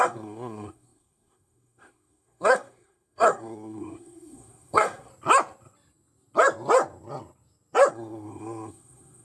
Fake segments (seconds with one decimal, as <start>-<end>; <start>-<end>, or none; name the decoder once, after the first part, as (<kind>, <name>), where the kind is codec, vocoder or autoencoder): 0.0-5.1 (codec, SNAC); 7.9-9.2